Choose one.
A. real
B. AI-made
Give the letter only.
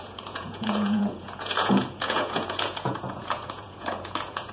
B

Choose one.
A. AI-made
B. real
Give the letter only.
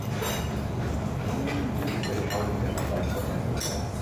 B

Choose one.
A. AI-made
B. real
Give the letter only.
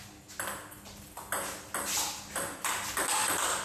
B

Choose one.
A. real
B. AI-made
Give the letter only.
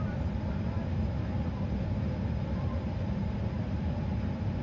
A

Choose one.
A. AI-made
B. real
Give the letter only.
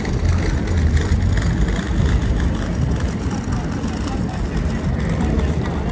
B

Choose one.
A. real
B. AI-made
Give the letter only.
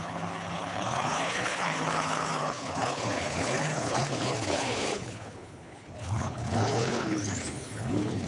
B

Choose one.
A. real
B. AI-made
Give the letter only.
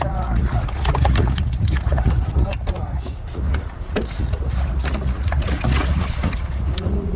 B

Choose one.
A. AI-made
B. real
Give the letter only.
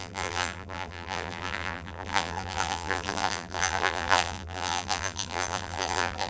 A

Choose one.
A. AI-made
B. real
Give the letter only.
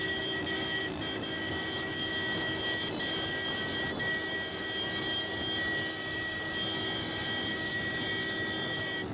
B